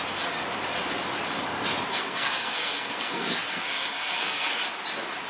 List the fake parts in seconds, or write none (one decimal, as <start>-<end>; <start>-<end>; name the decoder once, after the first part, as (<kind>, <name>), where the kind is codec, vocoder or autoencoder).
1.9-4.6 (codec, SNAC)